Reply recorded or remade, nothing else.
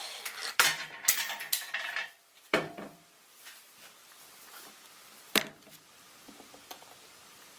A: remade